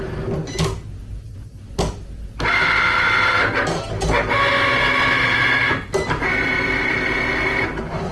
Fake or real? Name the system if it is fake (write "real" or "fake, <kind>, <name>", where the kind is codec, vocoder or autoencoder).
real